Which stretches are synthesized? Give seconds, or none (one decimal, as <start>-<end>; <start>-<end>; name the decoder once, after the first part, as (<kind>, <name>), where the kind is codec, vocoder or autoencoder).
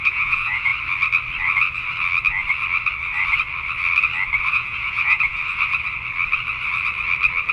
0.0-0.7 (vocoder, Vocos); 4.5-5.4